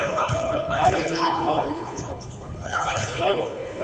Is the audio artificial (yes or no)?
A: yes